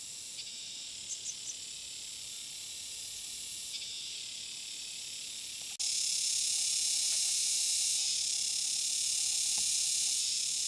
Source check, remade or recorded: recorded